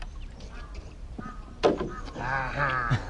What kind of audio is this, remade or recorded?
recorded